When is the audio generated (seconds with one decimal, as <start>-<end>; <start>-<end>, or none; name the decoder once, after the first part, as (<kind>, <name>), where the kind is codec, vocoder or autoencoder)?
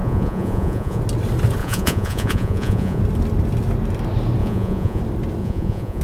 0.0-1.0 (vocoder, Vocos); 1.6-3.0; 4.4-5.0; 5.4-6.0